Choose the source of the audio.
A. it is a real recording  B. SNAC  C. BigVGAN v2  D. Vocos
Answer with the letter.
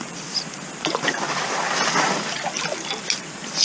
C